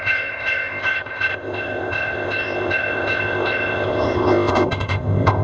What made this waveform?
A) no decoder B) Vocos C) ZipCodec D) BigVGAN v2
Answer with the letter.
C